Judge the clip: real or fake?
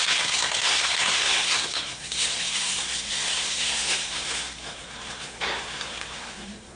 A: fake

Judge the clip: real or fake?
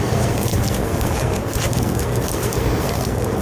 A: fake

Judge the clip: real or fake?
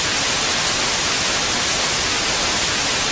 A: real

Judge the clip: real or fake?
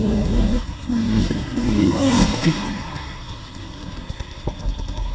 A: fake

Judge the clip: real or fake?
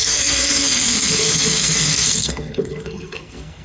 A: fake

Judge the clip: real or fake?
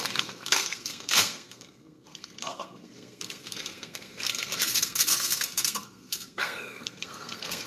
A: fake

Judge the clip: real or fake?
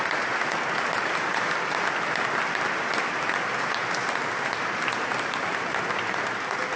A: real